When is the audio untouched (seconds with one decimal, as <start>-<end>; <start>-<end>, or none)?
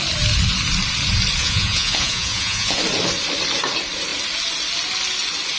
0.0-1.4; 2.8-5.6